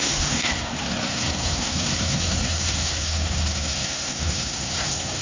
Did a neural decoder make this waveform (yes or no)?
yes